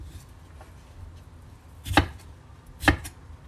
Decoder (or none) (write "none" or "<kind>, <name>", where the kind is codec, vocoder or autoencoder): none